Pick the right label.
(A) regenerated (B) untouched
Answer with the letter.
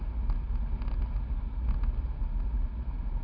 B